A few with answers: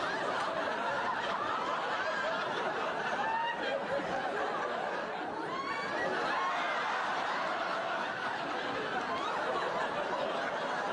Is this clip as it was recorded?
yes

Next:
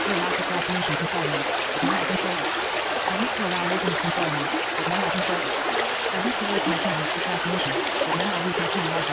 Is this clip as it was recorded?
yes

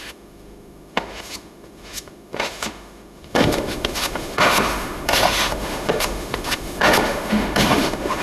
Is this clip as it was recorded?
no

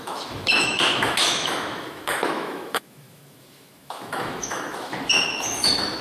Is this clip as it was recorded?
no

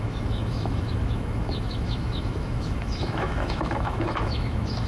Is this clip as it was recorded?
no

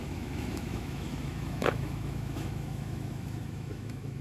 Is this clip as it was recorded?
no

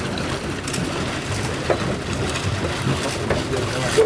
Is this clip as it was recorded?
yes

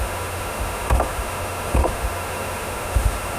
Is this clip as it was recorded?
no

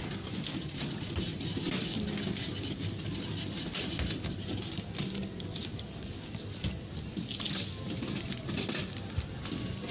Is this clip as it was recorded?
yes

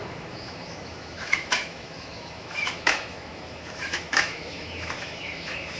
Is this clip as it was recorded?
no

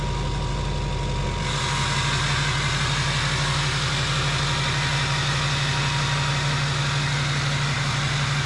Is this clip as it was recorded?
yes